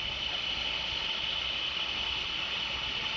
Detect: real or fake real